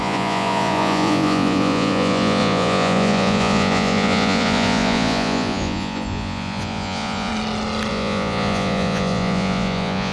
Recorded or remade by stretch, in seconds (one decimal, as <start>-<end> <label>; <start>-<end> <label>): 0.0-7.3 remade; 7.3-7.9 recorded; 7.9-10.1 remade